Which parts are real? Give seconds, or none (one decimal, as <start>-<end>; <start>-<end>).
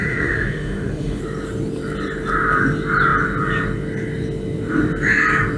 1.2-5.6